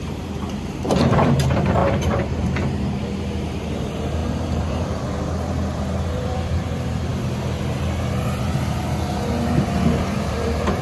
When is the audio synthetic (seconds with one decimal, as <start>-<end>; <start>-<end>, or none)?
0.0-7.1; 10.0-10.8